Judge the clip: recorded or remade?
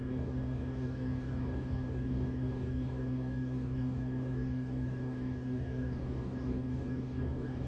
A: remade